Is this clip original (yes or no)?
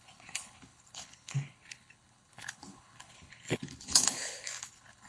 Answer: no